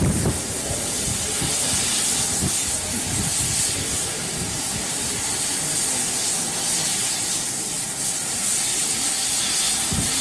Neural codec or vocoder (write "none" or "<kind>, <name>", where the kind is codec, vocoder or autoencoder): none